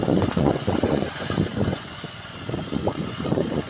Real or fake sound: fake